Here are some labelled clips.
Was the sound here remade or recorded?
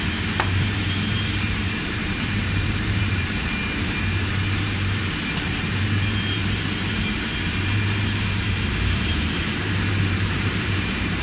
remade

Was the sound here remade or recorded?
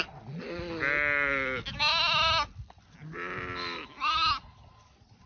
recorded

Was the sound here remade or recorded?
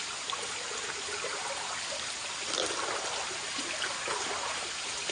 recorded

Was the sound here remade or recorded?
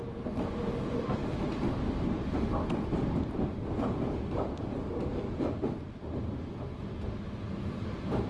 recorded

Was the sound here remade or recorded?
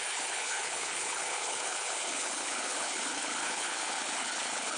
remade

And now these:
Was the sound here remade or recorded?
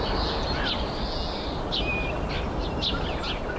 recorded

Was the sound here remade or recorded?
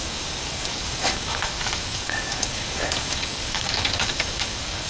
remade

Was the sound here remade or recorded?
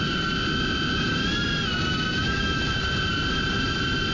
recorded